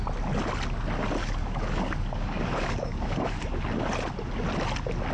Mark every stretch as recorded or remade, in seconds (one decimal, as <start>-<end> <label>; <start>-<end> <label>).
0.0-1.2 recorded; 1.2-3.6 remade; 3.6-5.1 recorded